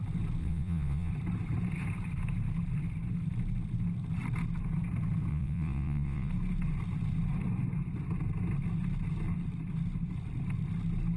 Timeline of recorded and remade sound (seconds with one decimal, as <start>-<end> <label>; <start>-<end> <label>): 0.0-0.4 recorded; 0.4-1.1 remade; 1.1-5.3 recorded; 5.3-6.3 remade; 6.3-11.2 recorded